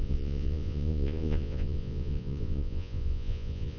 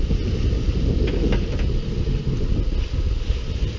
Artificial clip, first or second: first